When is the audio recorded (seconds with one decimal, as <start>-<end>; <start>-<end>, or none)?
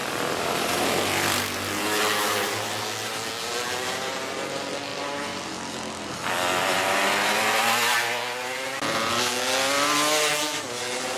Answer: 1.4-11.2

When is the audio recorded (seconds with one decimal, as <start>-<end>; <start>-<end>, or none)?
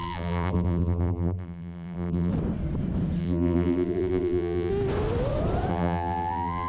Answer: 2.3-3.2; 4.7-5.7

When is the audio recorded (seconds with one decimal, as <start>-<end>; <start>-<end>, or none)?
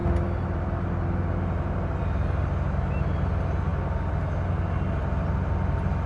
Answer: 0.0-6.1